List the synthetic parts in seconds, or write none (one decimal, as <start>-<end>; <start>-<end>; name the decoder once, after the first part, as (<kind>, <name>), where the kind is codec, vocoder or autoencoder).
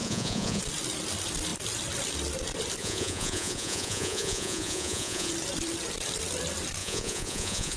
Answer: 0.0-0.6 (vocoder, Vocos); 2.8-5.3; 6.8-7.8